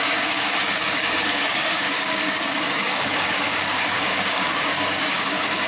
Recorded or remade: remade